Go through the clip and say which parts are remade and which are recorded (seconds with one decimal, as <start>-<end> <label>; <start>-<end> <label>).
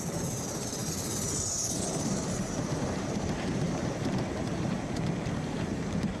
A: 0.0-6.2 remade